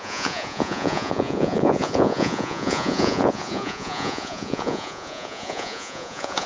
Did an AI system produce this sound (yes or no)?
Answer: yes